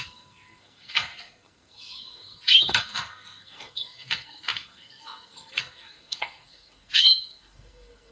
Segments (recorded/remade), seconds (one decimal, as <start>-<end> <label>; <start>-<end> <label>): 0.0-8.1 remade